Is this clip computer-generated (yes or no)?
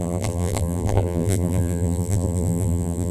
yes